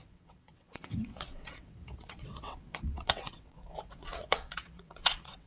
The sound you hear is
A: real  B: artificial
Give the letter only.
B